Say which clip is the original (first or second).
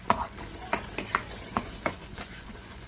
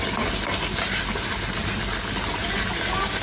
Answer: second